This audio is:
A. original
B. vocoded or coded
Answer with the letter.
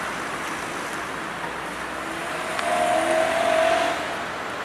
A